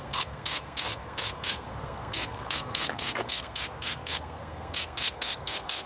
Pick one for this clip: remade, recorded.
remade